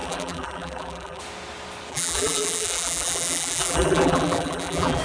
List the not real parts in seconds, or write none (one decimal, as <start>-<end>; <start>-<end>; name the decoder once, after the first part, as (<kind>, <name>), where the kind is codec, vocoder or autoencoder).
0.0-1.2 (vocoder, BigVGAN v2); 1.9-5.0